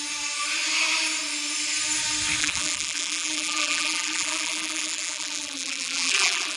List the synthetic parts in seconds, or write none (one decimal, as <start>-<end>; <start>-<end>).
2.4-6.6